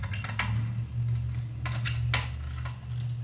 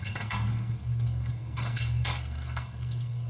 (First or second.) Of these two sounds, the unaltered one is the first